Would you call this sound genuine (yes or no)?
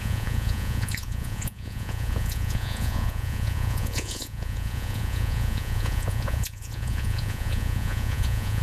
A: no